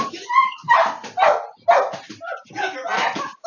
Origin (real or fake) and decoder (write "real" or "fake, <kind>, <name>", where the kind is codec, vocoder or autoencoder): real